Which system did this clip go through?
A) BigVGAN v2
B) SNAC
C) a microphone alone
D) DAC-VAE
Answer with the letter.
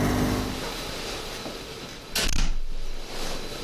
C